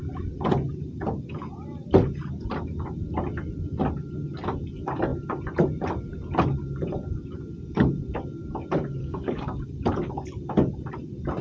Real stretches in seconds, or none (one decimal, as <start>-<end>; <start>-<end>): 0.0-9.0; 9.6-11.4